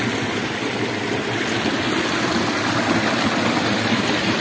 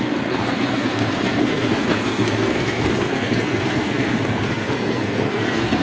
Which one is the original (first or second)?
first